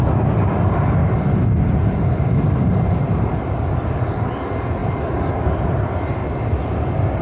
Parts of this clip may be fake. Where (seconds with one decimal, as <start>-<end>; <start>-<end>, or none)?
none